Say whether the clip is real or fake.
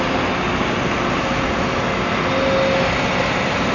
real